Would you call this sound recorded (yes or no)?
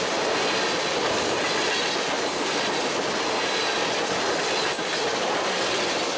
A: yes